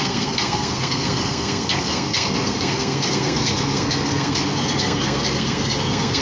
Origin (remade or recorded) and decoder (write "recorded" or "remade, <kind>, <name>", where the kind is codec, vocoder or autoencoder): remade, codec, SNAC